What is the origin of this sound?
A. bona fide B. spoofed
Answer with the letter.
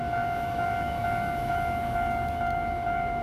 B